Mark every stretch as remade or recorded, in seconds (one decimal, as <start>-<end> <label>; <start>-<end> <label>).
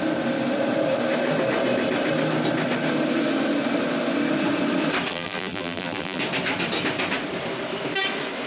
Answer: 0.0-5.1 recorded; 5.1-6.2 remade; 6.2-8.5 recorded